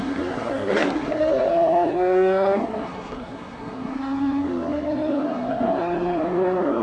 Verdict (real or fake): fake